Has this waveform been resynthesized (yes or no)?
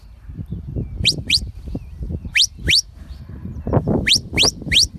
yes